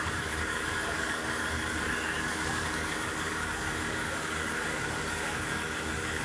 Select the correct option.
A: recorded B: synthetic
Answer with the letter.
B